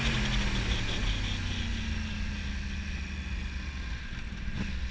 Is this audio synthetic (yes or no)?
no